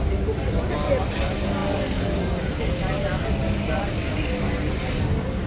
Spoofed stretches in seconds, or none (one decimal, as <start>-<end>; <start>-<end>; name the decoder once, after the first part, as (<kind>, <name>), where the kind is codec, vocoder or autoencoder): none